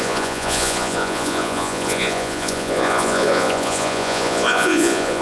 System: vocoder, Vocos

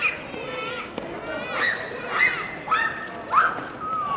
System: none